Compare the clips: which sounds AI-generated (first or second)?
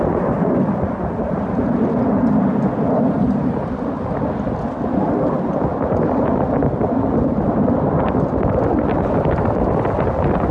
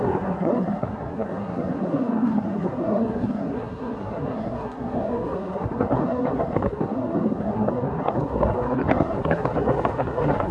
second